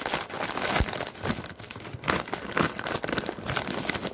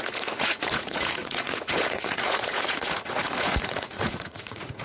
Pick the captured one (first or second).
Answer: first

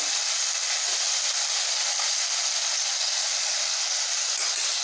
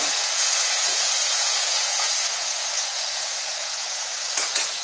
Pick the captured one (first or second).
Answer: first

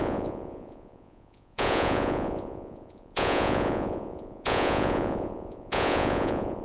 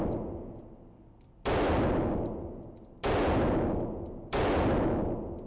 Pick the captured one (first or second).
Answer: second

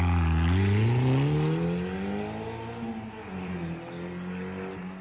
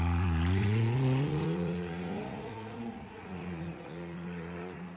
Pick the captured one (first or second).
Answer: first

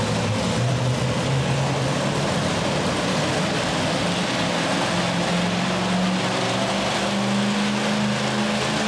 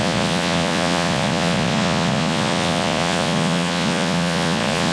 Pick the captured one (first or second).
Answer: first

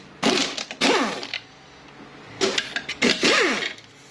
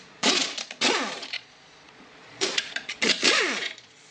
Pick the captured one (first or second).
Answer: first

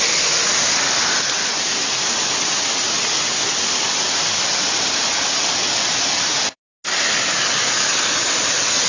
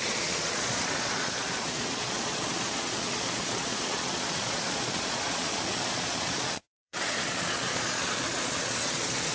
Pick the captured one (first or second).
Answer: first